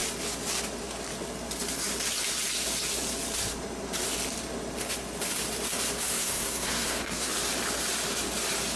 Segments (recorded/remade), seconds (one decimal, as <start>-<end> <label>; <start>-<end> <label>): 0.0-6.1 recorded; 6.1-7.3 remade; 7.3-8.8 recorded